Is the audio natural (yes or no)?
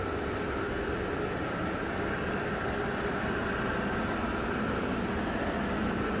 yes